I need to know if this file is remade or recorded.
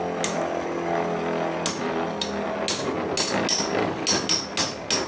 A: recorded